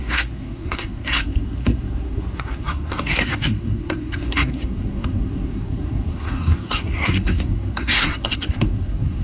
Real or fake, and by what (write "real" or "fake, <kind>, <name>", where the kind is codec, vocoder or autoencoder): fake, codec, SNAC